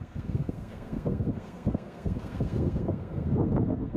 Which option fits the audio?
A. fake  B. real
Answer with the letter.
A